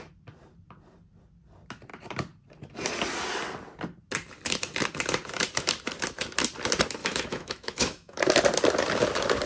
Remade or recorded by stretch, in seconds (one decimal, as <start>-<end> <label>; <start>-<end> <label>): 0.0-7.0 recorded; 7.0-8.2 remade; 8.2-9.5 recorded